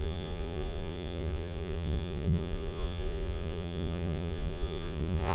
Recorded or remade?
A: remade